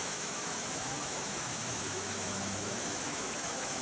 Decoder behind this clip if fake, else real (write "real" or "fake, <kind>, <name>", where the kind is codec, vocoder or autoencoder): fake, autoencoder, DAC-VAE